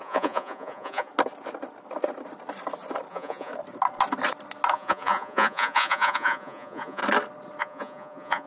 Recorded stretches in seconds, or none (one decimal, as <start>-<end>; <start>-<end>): 1.1-3.1; 3.5-4.7; 7.0-7.6